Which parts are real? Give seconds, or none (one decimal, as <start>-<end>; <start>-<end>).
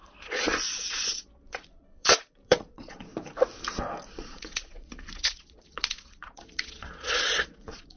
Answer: 3.1-4.1